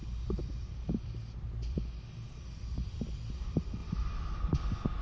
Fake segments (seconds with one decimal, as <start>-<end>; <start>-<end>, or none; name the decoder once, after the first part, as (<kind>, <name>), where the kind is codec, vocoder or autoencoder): none

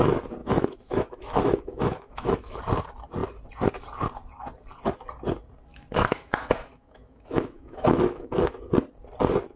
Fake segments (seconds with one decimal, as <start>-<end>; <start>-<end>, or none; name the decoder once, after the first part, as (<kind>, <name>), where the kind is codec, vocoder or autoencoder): 0.4-2.6 (autoencoder, DAC-VAE); 5.7-8.6

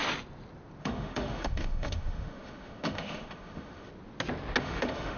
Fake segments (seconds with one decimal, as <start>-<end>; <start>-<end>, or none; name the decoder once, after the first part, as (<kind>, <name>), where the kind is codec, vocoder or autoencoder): 0.8-3.9 (autoencoder, DAC-VAE); 4.6-5.2

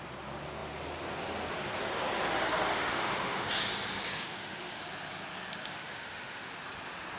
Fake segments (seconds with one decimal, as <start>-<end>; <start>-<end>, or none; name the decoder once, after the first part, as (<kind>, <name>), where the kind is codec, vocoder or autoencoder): 2.7-3.5 (autoencoder, DAC-VAE); 4.1-4.8; 5.6-6.5

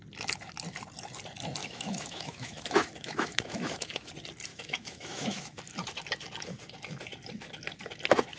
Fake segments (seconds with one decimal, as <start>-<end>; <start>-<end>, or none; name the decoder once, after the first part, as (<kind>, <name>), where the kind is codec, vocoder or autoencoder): 1.6-4.1 (autoencoder, DAC-VAE); 4.5-5.6